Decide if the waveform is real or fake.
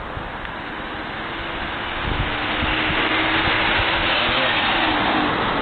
real